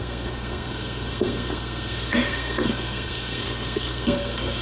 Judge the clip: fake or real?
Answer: fake